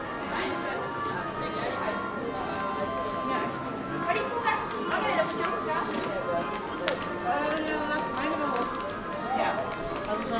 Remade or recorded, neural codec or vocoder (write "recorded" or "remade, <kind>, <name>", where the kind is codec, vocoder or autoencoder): recorded